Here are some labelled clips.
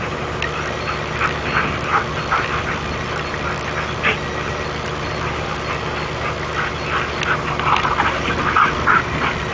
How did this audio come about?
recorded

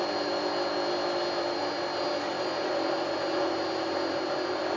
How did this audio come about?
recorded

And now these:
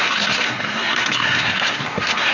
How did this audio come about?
remade